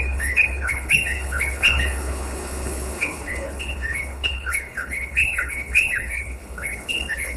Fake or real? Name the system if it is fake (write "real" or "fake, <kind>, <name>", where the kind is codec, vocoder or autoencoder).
fake, codec, HILCodec